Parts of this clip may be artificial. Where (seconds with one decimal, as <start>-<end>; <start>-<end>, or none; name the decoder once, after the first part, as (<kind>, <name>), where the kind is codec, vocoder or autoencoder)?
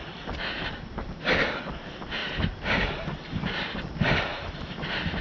2.2-3.7 (vocoder, BigVGAN v2); 4.3-5.2